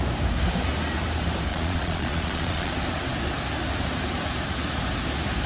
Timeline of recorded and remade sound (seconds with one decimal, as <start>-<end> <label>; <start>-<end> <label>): 0.0-1.5 recorded; 1.5-2.7 remade; 2.7-5.5 recorded